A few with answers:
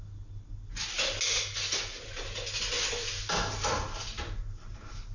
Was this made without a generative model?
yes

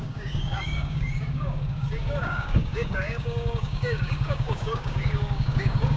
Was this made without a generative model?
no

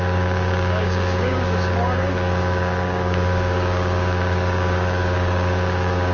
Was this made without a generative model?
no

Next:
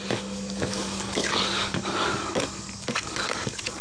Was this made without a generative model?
no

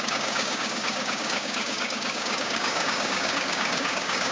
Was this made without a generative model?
no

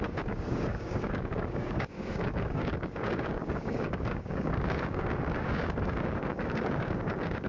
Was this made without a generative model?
no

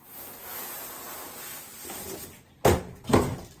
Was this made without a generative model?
yes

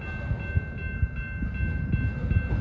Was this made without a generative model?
yes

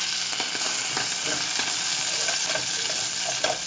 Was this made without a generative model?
yes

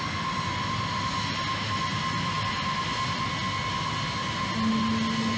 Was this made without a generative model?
yes